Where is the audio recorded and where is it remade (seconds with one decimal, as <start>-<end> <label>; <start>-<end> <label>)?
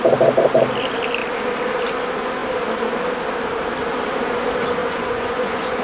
0.0-4.8 recorded; 4.8-5.8 remade